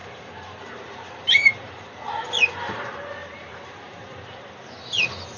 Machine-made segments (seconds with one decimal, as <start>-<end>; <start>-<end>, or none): 0.0-2.8; 3.2-4.5